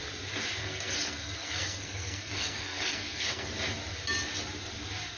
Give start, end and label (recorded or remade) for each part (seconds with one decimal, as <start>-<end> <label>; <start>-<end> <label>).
0.0-0.6 recorded; 0.6-3.5 remade; 3.5-5.2 recorded